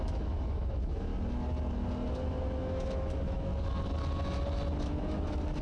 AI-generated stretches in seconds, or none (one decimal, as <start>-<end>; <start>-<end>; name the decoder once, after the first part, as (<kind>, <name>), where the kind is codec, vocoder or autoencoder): 0.0-1.1 (autoencoder, DAC-VAE); 2.1-3.5; 4.8-5.6